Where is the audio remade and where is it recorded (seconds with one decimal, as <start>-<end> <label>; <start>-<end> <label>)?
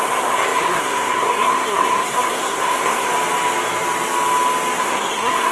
0.0-3.1 remade; 3.1-4.8 recorded; 4.8-5.5 remade